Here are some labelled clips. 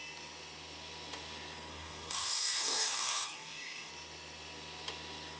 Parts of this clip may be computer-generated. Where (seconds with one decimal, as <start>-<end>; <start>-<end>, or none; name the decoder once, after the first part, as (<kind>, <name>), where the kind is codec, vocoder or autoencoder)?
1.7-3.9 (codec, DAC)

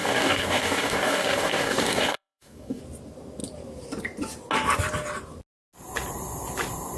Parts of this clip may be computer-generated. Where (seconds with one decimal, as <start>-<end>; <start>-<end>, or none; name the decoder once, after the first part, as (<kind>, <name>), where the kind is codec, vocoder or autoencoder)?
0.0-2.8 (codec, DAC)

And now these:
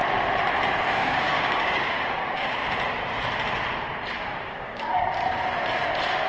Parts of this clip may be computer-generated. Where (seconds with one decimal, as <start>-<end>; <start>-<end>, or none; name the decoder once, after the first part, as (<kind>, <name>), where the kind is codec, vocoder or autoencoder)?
0.9-2.6 (codec, DAC); 4.4-5.2

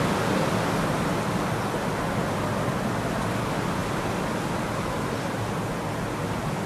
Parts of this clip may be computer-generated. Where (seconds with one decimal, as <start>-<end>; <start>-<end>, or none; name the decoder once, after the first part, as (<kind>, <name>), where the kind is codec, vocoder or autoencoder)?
none

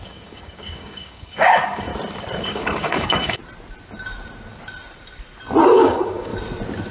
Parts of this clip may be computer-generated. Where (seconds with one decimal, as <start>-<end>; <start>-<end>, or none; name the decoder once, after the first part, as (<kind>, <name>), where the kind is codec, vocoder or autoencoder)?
0.0-1.9 (codec, DAC); 2.4-3.4; 5.7-6.3

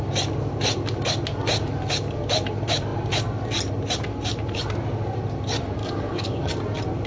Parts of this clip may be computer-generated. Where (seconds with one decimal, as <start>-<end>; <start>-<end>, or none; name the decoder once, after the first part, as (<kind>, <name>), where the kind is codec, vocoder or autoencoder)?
5.8-6.5 (codec, DAC)

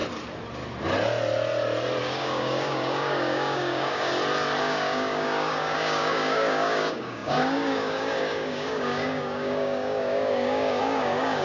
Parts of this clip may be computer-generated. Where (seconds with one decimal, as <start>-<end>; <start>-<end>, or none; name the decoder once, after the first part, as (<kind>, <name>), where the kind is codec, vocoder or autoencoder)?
2.0-4.1 (codec, DAC); 4.6-11.4